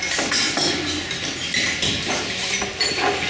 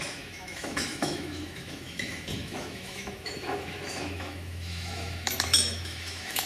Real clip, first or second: first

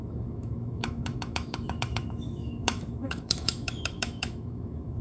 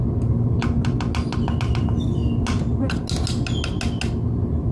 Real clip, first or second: second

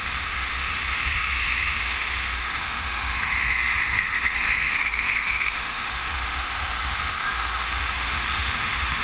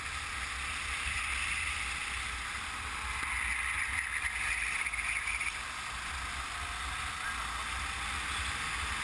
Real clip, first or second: second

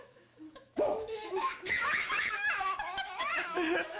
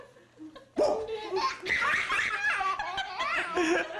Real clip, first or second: second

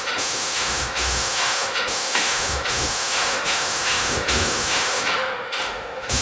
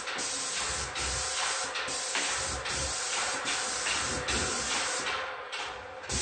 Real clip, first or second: second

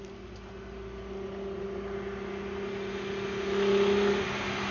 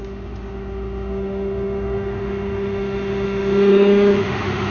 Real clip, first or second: first